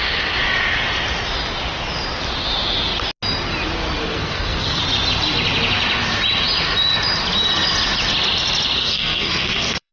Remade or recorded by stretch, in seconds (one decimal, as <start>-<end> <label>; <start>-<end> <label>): 0.0-4.0 recorded; 4.0-4.8 remade; 4.8-8.8 recorded; 8.8-9.9 remade